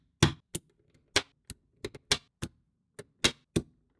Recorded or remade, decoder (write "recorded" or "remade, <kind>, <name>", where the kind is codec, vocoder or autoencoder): recorded